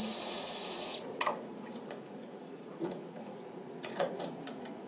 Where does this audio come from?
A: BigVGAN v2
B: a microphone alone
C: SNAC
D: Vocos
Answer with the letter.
D